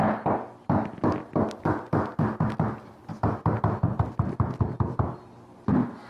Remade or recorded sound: recorded